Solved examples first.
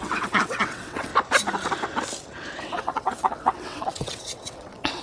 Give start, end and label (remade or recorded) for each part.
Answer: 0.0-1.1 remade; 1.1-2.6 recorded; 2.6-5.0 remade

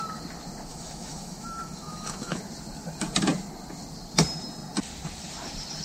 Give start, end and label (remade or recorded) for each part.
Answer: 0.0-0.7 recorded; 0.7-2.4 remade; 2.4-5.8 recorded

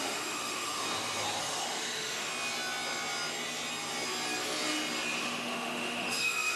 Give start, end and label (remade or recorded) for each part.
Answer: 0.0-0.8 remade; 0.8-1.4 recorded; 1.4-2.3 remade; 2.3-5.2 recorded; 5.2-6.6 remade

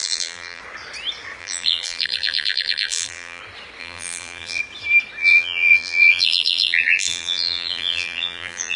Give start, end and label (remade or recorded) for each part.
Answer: 0.0-0.6 remade; 0.6-1.4 recorded; 1.4-3.4 remade; 3.4-3.8 recorded; 3.8-4.6 remade; 4.6-5.2 recorded; 5.2-8.8 remade

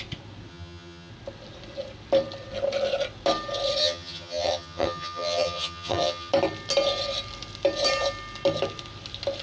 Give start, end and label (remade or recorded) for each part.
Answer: 0.0-0.5 recorded; 0.5-1.1 remade; 1.1-3.8 recorded; 3.8-6.3 remade; 6.3-9.4 recorded